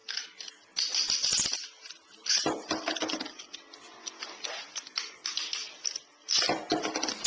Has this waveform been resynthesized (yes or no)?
no